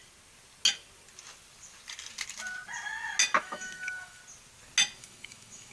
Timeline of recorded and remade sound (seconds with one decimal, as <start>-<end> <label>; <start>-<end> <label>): 0.0-3.4 recorded; 3.4-4.2 remade; 4.2-5.0 recorded; 5.0-5.7 remade